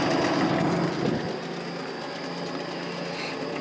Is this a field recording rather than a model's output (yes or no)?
yes